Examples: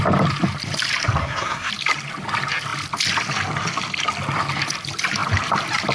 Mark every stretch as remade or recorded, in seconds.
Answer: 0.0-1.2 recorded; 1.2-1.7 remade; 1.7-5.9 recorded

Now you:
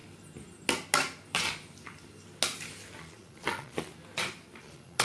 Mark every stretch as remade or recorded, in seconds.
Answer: 0.0-3.0 recorded; 3.0-3.9 remade; 3.9-4.6 recorded; 4.6-5.0 remade

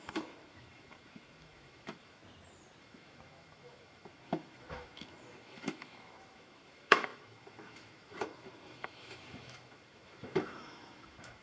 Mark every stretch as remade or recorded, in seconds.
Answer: 0.0-2.2 remade; 2.2-2.8 recorded; 2.8-11.4 remade